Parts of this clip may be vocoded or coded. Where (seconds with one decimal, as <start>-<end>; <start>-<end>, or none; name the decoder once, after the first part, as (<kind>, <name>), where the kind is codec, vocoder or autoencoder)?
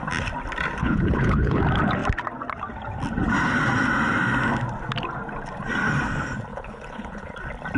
0.8-1.6 (codec, HILCodec); 6.5-7.3